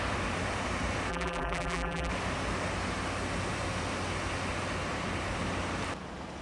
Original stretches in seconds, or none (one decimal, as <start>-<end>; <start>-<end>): 0.0-1.1; 2.1-6.4